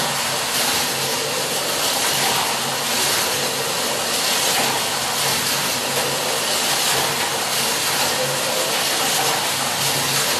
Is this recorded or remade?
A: recorded